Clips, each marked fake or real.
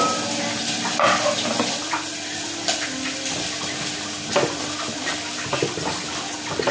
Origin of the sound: real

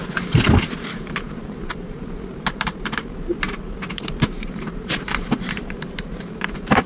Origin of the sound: fake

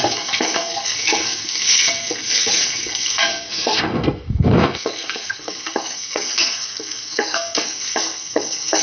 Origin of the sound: fake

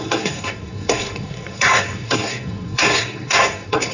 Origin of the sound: fake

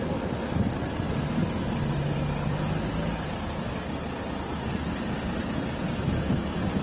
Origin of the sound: real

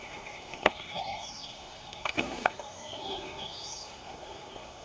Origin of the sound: fake